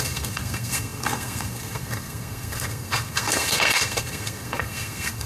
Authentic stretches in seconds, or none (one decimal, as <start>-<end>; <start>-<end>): none